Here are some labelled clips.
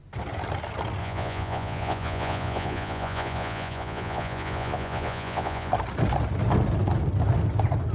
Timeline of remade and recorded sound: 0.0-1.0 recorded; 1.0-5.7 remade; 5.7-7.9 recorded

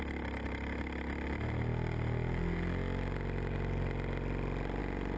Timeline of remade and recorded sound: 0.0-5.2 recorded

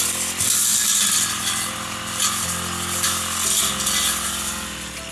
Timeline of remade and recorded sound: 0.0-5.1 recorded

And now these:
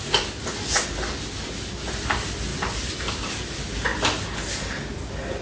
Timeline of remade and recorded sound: 0.0-5.4 recorded

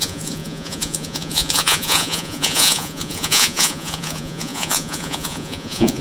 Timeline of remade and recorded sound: 0.0-6.0 remade